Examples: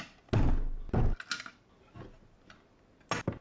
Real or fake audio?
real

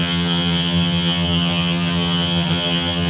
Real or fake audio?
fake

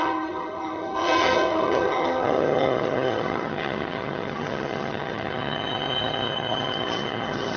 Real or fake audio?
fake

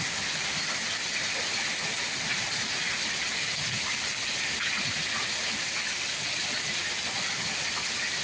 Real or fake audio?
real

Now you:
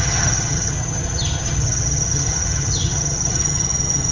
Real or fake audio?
fake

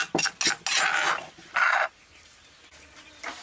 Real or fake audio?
real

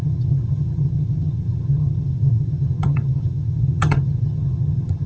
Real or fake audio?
fake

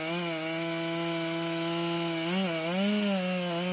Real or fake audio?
real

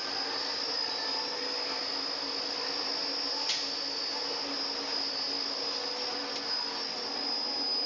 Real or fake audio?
real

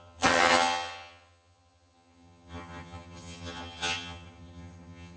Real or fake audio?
fake